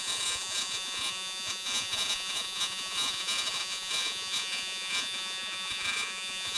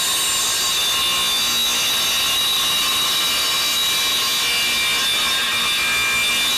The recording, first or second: second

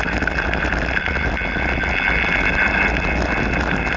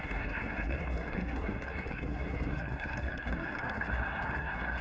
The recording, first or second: first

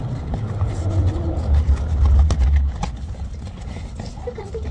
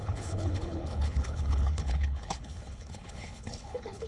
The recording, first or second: first